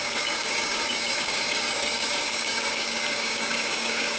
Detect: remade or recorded remade